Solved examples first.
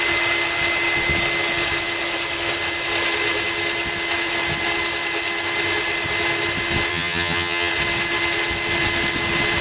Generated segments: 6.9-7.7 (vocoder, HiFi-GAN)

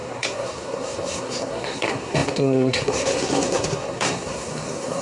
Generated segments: 0.0-5.0 (codec, SNAC)

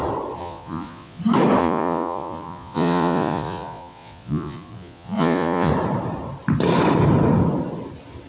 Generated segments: 0.4-1.2 (vocoder, Vocos); 1.6-5.7